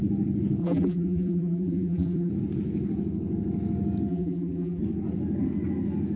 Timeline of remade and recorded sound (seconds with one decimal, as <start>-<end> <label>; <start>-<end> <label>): 0.0-0.6 recorded; 0.6-2.3 remade; 2.3-4.1 recorded; 4.1-4.8 remade; 4.8-6.2 recorded